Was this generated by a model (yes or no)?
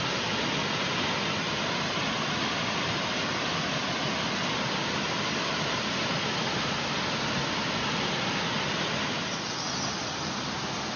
no